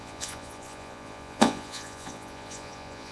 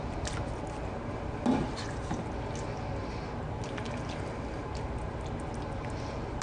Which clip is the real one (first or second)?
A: second